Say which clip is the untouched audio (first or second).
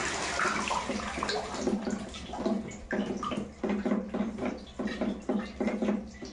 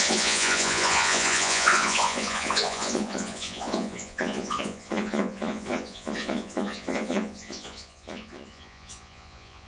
first